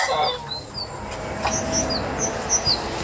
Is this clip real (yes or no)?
yes